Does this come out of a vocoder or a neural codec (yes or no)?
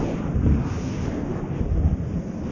no